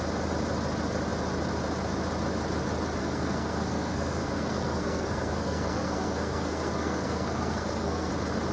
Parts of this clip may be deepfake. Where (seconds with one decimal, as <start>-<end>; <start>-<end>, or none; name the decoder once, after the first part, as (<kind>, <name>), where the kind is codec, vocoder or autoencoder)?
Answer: 3.0-8.1 (codec, SNAC)